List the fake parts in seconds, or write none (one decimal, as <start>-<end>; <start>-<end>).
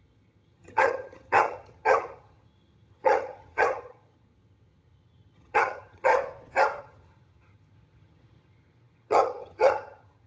0.0-6.1; 6.8-10.3